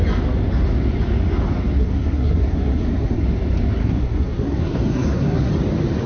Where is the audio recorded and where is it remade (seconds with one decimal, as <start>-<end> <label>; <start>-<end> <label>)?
0.0-1.8 recorded; 1.8-3.2 remade; 3.2-3.8 recorded; 3.8-5.5 remade; 5.5-6.1 recorded